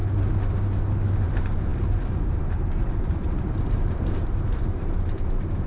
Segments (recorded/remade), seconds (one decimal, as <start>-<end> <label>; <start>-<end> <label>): 0.0-1.2 recorded; 1.2-5.7 remade